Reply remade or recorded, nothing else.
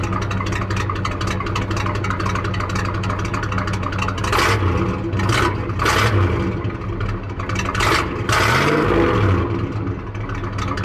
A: recorded